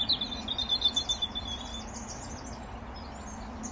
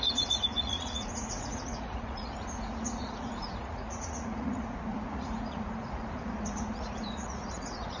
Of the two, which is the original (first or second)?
first